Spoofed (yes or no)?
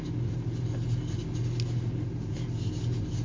no